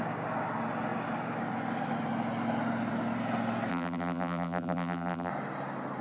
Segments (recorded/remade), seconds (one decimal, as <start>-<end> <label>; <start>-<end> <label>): 0.0-3.7 recorded; 3.7-5.3 remade; 5.3-6.0 recorded